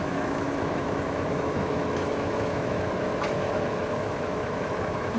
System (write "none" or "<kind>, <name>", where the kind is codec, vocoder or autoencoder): autoencoder, DAC-VAE